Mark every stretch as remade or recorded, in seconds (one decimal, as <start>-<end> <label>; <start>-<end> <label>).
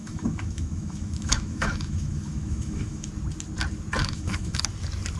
0.0-3.1 remade; 3.1-4.0 recorded; 4.0-4.6 remade; 4.6-5.2 recorded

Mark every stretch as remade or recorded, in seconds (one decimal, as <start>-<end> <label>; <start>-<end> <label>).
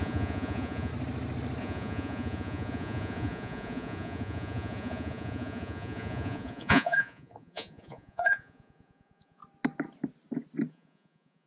0.0-0.9 remade; 0.9-1.6 recorded; 1.6-9.4 remade; 9.4-10.7 recorded; 10.7-11.5 remade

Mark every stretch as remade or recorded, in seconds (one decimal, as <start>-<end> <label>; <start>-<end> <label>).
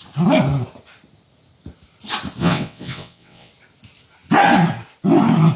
0.0-2.4 recorded; 2.4-3.5 remade; 3.5-5.6 recorded